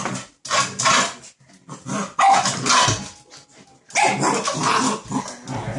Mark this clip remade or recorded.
recorded